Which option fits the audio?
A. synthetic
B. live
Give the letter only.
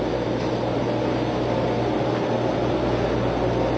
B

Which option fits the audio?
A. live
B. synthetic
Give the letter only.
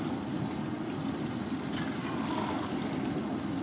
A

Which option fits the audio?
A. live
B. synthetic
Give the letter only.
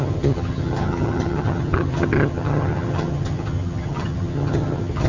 B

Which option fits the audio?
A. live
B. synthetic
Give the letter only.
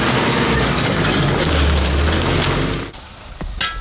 A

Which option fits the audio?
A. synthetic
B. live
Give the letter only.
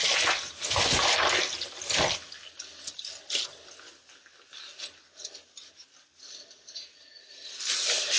B